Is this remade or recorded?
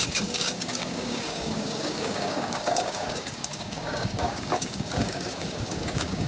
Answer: remade